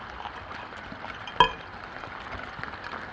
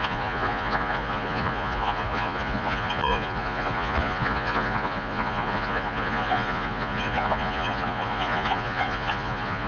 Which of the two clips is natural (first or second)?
first